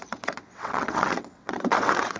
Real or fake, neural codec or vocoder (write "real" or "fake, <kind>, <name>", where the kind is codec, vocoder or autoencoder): fake, vocoder, WaveNeXt